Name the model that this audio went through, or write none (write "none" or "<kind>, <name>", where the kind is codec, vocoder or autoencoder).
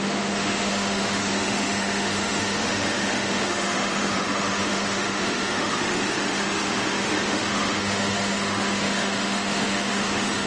autoencoder, DAC-VAE